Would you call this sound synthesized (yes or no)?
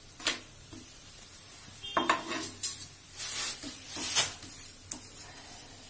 no